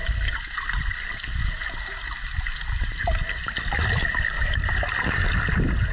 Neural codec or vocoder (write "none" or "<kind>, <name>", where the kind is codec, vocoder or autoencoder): none